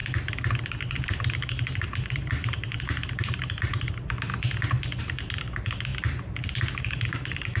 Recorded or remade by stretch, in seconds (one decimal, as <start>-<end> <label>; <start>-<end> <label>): 0.0-0.7 recorded; 0.7-4.3 remade; 4.3-5.0 recorded; 5.0-5.9 remade; 5.9-6.8 recorded; 6.8-7.6 remade